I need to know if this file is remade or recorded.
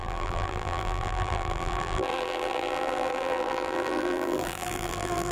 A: remade